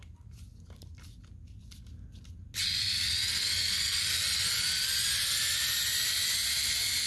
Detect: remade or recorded recorded